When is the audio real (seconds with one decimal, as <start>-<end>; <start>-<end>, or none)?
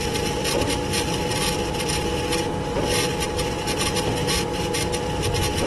2.2-5.7